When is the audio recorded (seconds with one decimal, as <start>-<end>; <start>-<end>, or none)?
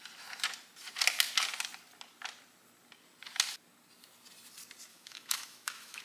0.0-4.9